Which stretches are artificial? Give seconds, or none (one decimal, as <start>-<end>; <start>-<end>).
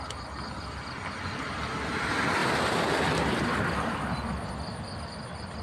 none